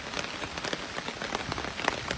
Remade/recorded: recorded